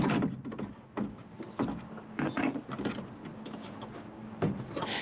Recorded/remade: recorded